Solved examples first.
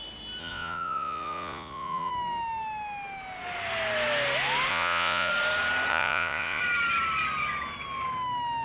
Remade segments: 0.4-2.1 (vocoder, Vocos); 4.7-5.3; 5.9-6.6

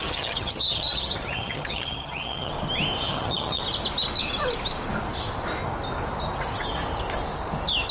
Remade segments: 0.0-2.5 (vocoder, HiFi-GAN); 3.0-3.6

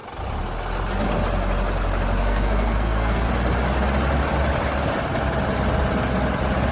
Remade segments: 2.2-3.3 (codec, SNAC)

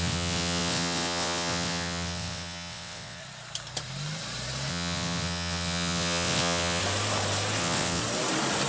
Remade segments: 0.0-3.2 (vocoder, WaveNeXt); 4.7-6.8; 7.6-8.0